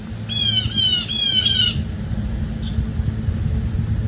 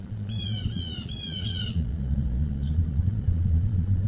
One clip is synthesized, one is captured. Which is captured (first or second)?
first